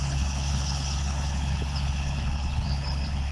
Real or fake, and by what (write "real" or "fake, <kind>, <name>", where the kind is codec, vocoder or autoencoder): fake, codec, HILCodec